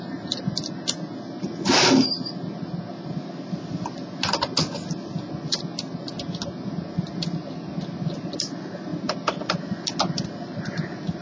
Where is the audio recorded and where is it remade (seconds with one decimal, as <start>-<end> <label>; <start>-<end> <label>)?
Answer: 0.0-11.2 recorded